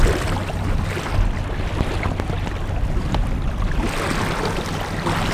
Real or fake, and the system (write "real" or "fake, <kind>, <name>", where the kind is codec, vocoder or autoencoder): real